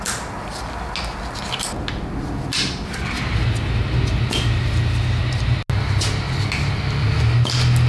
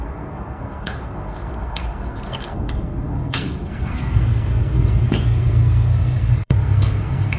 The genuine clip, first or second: first